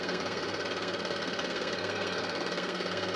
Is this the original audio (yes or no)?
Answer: no